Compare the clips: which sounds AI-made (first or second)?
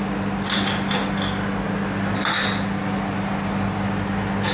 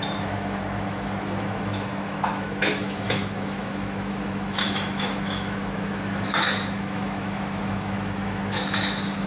second